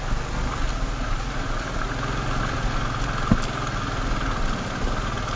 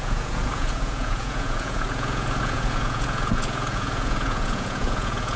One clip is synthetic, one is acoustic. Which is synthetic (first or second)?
second